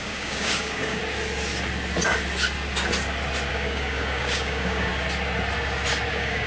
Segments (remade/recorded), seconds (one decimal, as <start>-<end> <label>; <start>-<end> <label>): 0.0-1.0 remade; 1.0-3.5 recorded; 3.5-4.9 remade; 4.9-6.1 recorded; 6.1-6.5 remade